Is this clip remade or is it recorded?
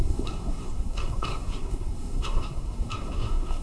remade